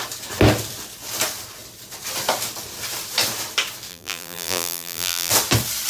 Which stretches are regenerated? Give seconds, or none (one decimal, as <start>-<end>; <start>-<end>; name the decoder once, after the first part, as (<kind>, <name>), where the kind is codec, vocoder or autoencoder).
3.9-5.3 (vocoder, BigVGAN v2)